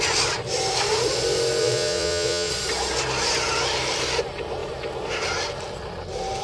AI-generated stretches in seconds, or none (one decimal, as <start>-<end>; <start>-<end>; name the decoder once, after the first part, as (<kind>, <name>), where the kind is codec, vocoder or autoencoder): 1.6-2.5 (vocoder, Vocos)